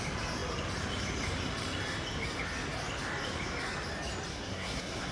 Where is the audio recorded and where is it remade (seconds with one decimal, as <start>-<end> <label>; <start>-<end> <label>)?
0.0-4.3 recorded; 4.3-5.1 remade